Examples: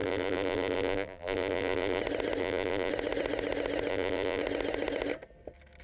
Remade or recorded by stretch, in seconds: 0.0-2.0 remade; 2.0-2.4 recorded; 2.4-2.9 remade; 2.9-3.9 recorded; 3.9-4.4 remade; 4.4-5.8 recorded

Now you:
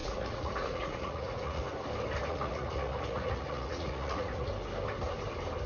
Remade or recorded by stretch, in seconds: 0.0-1.6 remade; 1.6-2.3 recorded; 2.3-4.5 remade; 4.5-5.7 recorded